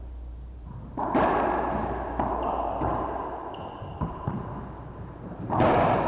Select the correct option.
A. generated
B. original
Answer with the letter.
A